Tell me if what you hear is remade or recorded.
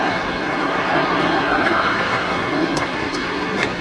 remade